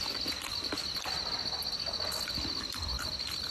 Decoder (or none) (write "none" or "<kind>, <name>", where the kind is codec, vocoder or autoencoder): none